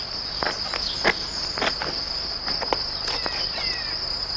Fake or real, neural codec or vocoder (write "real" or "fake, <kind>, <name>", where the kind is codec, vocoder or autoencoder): real